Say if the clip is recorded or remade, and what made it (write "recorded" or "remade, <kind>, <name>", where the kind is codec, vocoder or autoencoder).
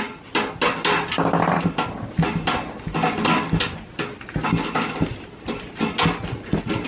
recorded